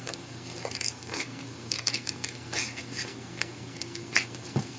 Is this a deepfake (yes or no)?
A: yes